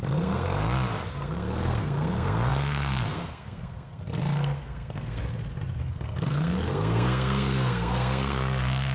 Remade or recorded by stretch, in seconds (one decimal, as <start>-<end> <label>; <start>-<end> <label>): 0.0-0.6 remade; 0.6-1.1 recorded; 1.1-5.2 remade; 5.2-5.8 recorded; 5.8-8.9 remade